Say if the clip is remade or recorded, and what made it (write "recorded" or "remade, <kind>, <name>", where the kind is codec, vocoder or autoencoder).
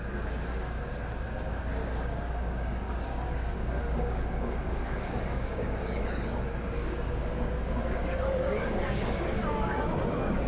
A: remade, codec, DAC